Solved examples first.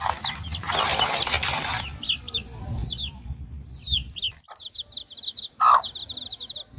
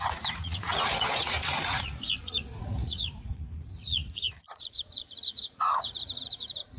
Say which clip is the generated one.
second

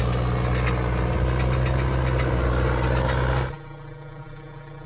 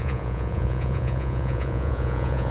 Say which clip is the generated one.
second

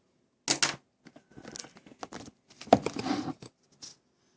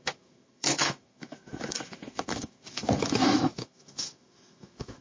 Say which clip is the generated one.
second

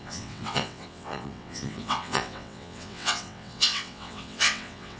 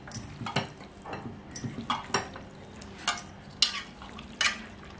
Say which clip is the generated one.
first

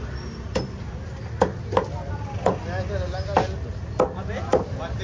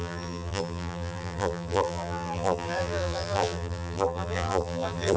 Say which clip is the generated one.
second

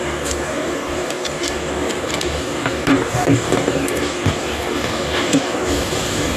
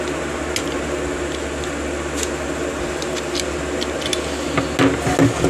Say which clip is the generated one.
first